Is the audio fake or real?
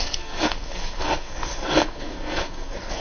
fake